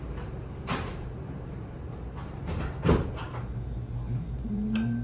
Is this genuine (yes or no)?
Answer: no